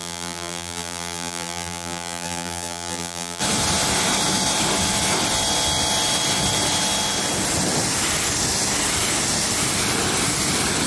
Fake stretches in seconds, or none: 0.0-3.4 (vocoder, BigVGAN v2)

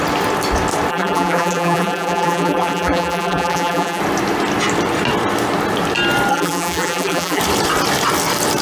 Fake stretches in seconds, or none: 0.9-4.0 (vocoder, BigVGAN v2); 6.3-7.4

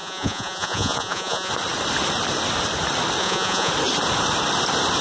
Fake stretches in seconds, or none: 0.0-1.5 (vocoder, Vocos); 3.2-3.7

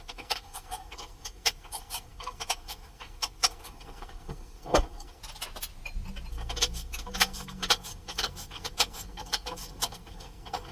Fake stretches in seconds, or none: 0.0-5.2 (codec, SNAC); 6.3-10.7

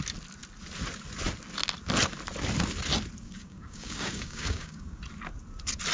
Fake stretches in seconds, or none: 3.2-5.0 (codec, DAC)

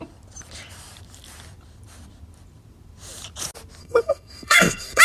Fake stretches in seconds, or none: 3.8-5.0 (codec, SNAC)

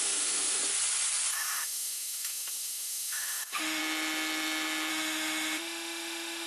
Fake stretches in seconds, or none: 0.0-0.6 (autoencoder, DAC-VAE); 1.3-3.8; 4.9-6.5

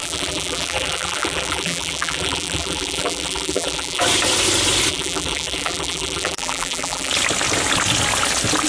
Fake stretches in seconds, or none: 0.0-4.0 (vocoder, BigVGAN v2); 4.9-7.1